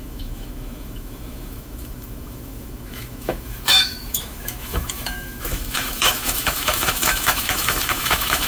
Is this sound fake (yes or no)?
yes